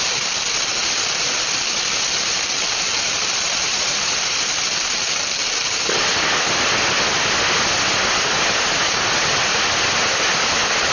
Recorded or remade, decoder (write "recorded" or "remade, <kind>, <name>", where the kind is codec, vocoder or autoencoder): recorded